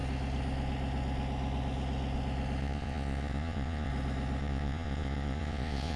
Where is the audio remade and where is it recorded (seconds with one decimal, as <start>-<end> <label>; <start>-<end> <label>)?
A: 0.0-2.6 recorded; 2.6-3.9 remade; 3.9-4.4 recorded; 4.4-6.0 remade